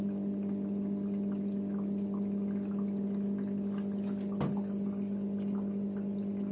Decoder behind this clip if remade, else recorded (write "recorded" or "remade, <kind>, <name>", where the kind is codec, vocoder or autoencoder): recorded